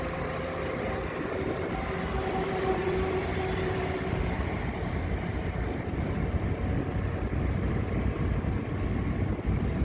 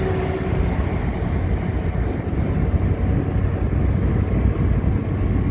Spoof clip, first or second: first